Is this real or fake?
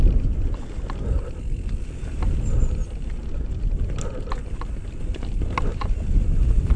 real